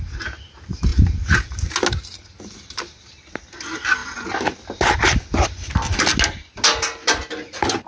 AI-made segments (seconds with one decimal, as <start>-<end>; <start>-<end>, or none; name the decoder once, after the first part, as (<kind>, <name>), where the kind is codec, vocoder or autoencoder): none